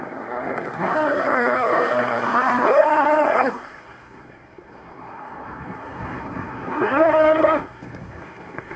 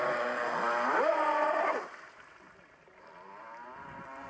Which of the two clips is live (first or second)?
second